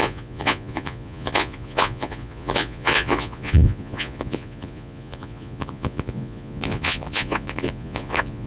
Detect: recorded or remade remade